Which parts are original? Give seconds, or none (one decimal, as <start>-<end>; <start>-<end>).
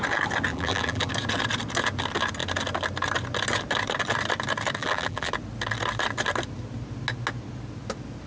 0.0-0.5; 1.1-4.8; 5.3-8.3